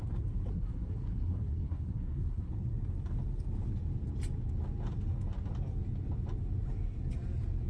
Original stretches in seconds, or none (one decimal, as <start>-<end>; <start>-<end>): 0.0-0.5; 2.5-7.7